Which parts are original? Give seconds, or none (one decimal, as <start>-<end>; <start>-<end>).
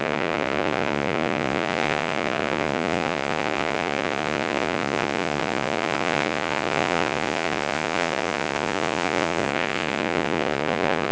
none